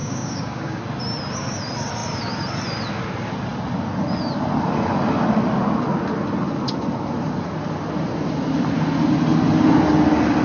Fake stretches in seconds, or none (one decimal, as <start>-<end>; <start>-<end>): 0.0-0.8